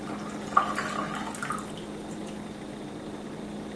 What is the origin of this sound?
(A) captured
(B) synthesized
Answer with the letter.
A